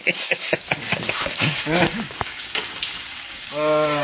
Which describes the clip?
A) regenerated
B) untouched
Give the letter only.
A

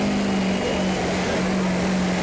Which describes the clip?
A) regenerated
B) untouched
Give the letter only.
B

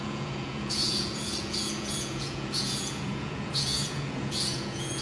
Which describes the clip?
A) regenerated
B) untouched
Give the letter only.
A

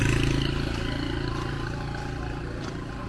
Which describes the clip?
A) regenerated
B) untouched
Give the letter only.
B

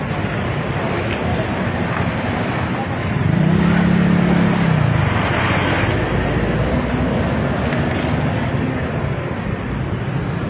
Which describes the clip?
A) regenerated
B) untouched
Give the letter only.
B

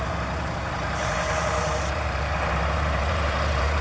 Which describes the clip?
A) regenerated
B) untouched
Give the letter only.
A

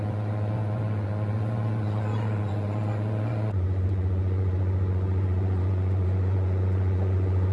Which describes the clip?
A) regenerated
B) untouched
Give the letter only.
A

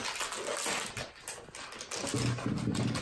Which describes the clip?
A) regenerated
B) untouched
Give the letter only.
B